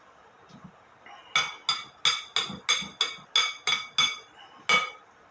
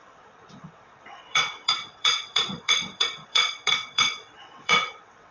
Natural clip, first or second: first